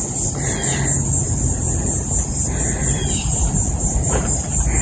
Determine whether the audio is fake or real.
real